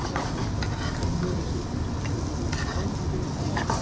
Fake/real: real